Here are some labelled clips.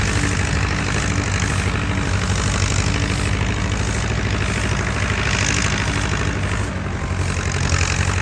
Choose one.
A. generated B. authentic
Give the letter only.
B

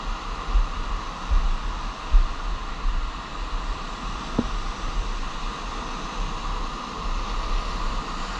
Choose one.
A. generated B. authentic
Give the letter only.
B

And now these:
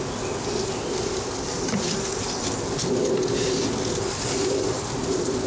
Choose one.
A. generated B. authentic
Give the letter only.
B